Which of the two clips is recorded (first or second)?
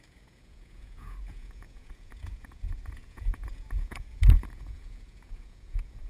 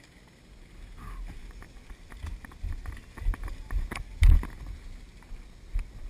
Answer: second